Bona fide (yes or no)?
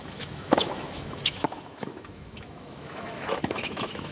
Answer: no